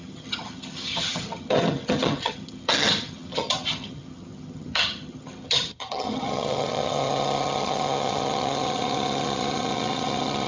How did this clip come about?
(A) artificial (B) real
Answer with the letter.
A